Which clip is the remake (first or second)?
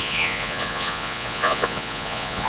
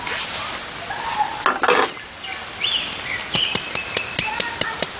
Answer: first